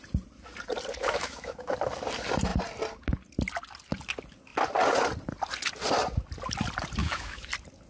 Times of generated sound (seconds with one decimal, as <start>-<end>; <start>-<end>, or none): 1.0-1.7; 7.0-7.5

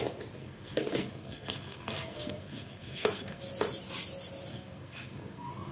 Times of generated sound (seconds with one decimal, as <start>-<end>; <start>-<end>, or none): 0.4-3.4; 4.5-5.7